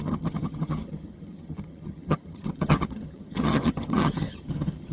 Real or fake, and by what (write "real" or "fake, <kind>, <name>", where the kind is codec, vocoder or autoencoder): fake, vocoder, HiFi-GAN